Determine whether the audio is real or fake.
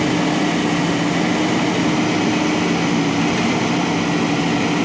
real